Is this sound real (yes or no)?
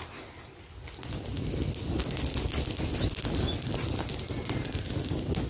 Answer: yes